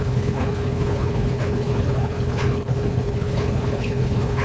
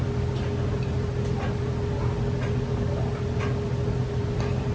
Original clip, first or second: second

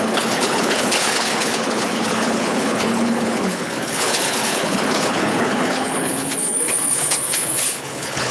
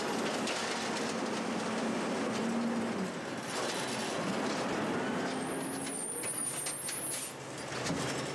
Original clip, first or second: second